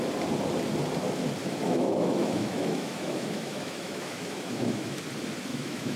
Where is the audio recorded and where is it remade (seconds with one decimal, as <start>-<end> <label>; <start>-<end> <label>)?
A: 0.0-1.4 recorded; 1.4-5.0 remade; 5.0-5.5 recorded; 5.5-6.0 remade